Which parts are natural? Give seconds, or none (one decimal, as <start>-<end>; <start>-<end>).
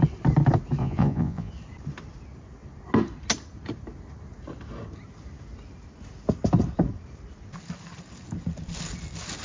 0.0-0.8; 1.5-9.4